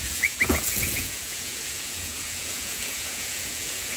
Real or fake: fake